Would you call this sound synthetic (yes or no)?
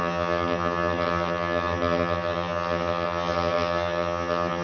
yes